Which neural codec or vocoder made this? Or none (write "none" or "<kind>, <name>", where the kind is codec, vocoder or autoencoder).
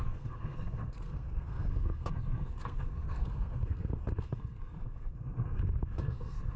codec, SNAC